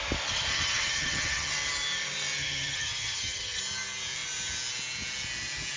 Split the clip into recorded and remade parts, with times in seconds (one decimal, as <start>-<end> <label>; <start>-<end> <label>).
0.0-0.5 recorded; 0.5-1.5 remade; 1.5-2.4 recorded; 2.4-3.6 remade; 3.6-5.8 recorded